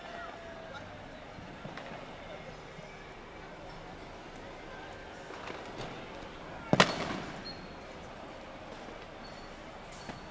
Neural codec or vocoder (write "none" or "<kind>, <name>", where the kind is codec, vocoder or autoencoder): none